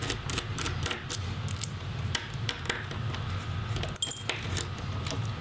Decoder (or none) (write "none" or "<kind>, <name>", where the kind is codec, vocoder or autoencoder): none